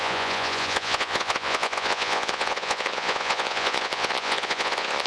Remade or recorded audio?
remade